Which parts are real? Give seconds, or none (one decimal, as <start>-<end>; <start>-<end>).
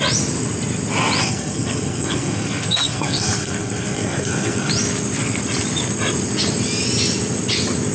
0.0-1.2; 4.7-7.9